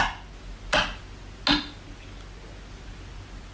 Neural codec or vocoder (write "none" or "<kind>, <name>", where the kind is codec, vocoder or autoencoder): none